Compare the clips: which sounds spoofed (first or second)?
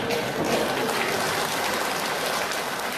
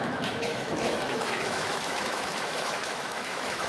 second